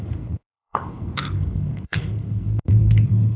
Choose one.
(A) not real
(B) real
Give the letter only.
A